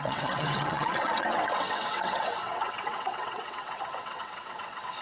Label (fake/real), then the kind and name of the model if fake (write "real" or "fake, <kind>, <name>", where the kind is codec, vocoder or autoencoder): fake, vocoder, WaveNeXt